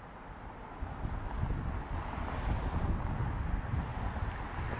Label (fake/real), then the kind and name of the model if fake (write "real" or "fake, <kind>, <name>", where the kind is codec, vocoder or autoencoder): real